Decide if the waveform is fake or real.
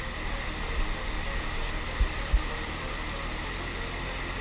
real